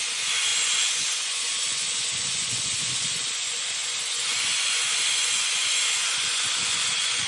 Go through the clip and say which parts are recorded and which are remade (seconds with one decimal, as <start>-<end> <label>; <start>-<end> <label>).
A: 0.0-7.3 remade